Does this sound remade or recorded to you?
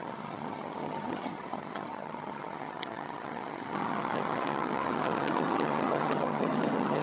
remade